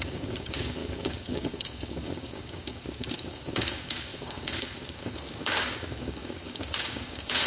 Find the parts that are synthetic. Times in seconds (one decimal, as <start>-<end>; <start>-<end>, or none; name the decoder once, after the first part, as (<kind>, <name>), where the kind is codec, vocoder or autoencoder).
0.0-7.5 (codec, DAC)